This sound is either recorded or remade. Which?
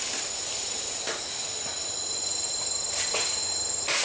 recorded